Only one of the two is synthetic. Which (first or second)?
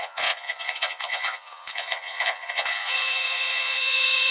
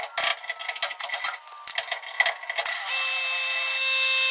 first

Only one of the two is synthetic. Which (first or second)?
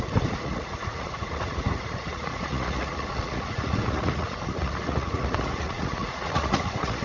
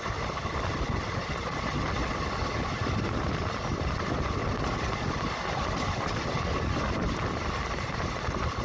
first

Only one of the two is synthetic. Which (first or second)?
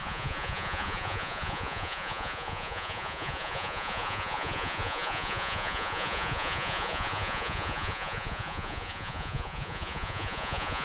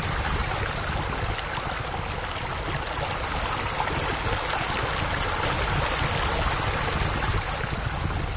first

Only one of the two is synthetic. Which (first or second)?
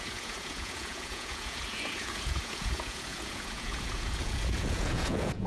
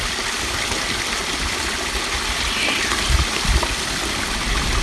first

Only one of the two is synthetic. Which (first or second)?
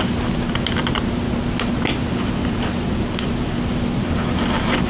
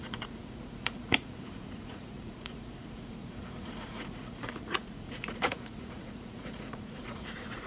second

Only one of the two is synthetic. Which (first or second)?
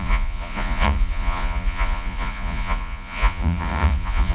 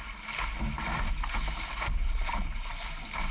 first